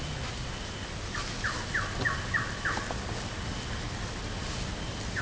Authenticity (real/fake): real